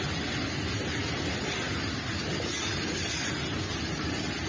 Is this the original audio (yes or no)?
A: yes